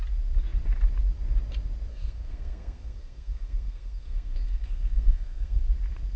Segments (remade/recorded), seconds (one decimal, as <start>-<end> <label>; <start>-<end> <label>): 0.0-1.9 recorded; 1.9-5.6 remade; 5.6-6.2 recorded